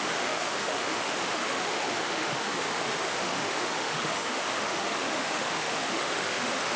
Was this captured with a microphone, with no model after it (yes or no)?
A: no